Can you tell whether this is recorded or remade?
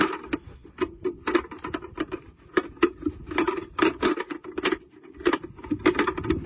recorded